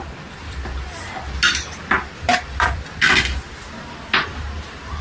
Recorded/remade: recorded